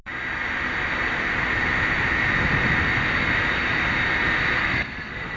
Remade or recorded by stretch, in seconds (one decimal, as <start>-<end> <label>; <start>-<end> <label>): 0.0-4.6 recorded; 4.6-5.4 remade